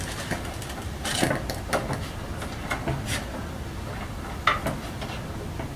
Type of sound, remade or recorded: recorded